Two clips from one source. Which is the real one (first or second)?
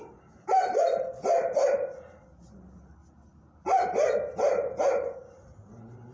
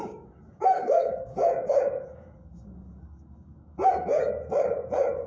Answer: first